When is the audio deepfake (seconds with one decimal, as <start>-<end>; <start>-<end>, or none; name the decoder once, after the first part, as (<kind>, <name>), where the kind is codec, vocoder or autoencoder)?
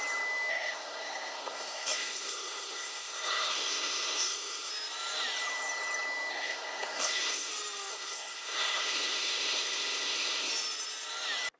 0.5-4.7 (codec, SNAC); 6.3-7.5; 7.9-10.5